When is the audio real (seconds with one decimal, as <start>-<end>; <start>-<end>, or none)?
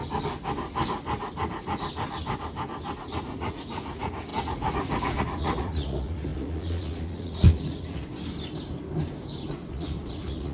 0.0-3.0; 8.1-9.5